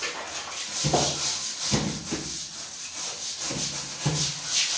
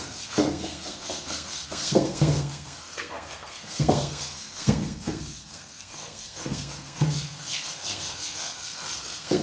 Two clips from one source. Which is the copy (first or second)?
second